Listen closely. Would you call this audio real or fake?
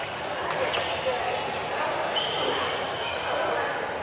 real